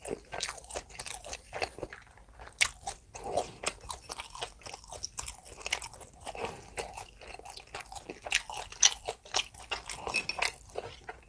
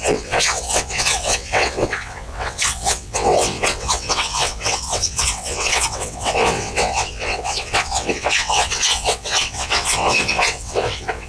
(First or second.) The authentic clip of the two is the first